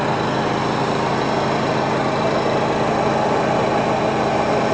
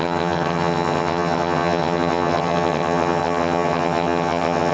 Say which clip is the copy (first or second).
second